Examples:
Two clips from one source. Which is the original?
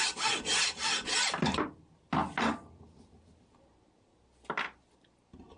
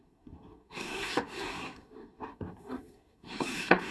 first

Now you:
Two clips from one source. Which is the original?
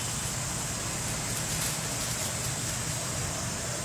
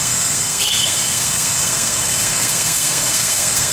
first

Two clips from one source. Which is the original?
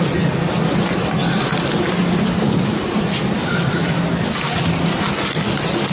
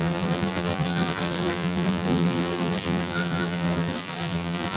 first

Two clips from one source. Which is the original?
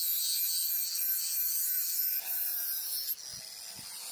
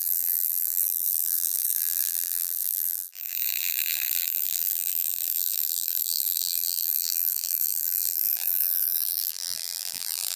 first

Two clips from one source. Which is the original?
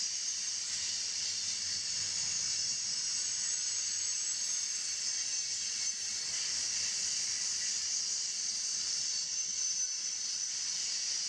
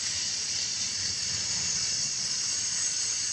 first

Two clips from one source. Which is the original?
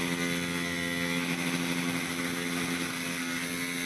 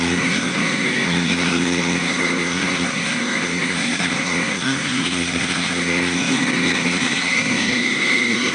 first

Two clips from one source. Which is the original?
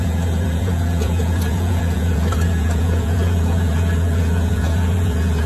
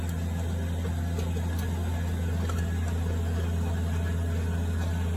second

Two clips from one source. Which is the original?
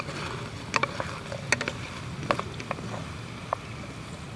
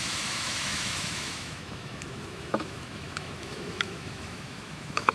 first